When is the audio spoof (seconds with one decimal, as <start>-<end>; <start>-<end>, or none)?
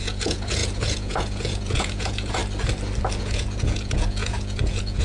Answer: 0.0-2.4; 3.2-5.0